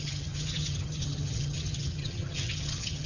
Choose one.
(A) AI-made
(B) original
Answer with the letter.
A